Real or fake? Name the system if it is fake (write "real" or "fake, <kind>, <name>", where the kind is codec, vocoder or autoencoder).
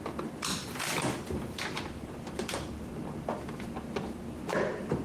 real